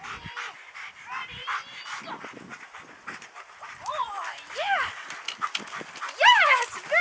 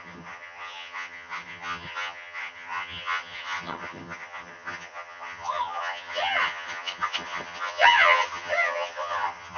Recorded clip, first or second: first